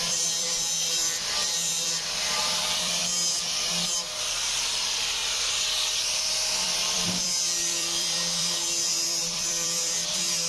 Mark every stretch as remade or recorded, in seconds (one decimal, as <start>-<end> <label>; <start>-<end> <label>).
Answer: 0.0-3.0 remade; 3.0-4.2 recorded; 4.2-5.2 remade; 5.2-6.0 recorded; 6.0-10.5 remade